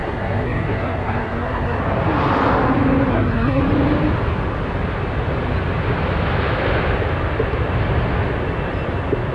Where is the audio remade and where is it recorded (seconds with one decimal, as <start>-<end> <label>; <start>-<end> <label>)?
0.0-1.8 remade; 1.8-3.1 recorded; 3.1-3.6 remade; 3.6-9.3 recorded

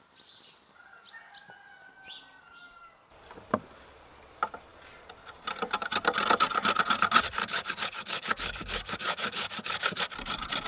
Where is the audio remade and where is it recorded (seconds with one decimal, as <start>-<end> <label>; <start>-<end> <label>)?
0.0-7.4 recorded; 7.4-10.0 remade; 10.0-10.7 recorded

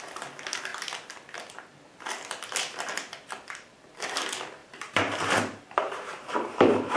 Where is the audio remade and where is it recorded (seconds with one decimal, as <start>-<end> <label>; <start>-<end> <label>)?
0.0-4.6 recorded; 4.6-7.0 remade

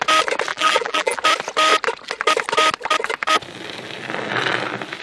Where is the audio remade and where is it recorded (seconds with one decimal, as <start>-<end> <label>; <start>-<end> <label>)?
0.0-0.5 recorded; 0.5-1.2 remade; 1.2-5.0 recorded